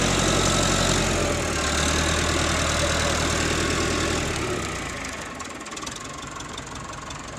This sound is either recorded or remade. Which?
recorded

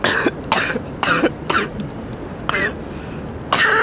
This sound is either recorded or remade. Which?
recorded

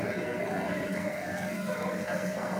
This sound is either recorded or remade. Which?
remade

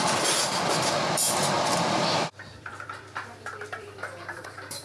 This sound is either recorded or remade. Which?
remade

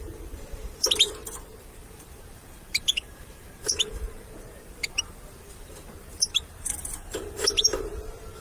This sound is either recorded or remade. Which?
remade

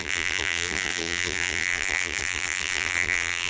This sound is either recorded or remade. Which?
remade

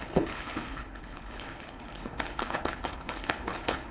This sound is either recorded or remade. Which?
remade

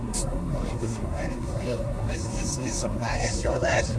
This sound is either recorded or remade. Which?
remade